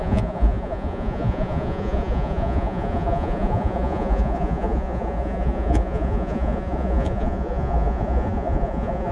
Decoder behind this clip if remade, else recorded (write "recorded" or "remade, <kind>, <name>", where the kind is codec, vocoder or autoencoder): remade, vocoder, Vocos